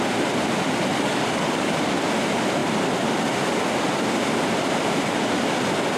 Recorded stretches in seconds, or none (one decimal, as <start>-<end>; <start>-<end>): 0.0-0.9; 1.9-6.0